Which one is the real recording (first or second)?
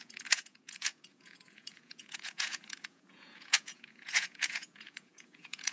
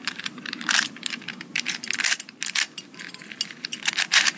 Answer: second